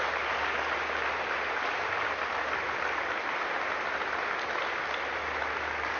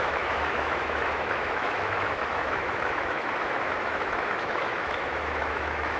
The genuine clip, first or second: first